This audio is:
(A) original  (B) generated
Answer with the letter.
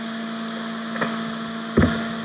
A